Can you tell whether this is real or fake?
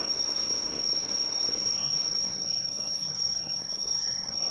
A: fake